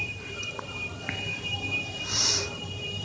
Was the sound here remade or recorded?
remade